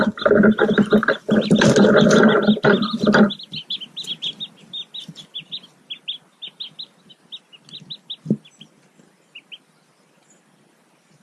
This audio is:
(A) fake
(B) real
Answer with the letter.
B